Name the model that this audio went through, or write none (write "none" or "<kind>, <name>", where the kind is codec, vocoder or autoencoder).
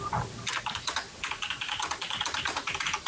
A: none